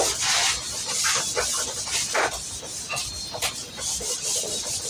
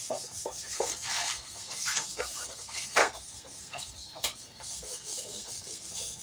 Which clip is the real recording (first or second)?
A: first